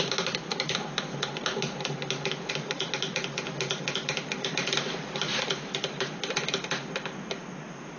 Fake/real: real